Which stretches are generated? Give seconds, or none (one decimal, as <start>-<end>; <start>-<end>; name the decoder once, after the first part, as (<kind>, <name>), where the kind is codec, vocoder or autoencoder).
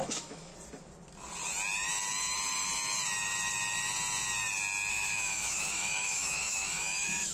0.0-0.5 (autoencoder, DAC-VAE); 4.9-7.3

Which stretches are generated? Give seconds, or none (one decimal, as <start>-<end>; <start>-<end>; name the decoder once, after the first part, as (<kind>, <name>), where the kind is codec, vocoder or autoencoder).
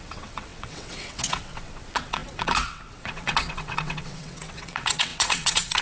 0.0-5.8 (vocoder, WaveNeXt)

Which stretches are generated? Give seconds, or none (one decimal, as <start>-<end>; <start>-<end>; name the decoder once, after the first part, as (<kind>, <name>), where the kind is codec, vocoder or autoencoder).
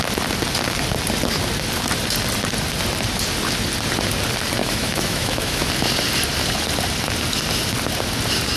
4.6-5.7 (autoencoder, DAC-VAE)